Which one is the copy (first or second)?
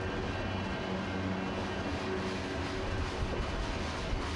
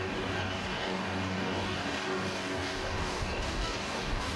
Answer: second